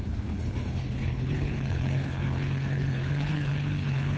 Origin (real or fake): fake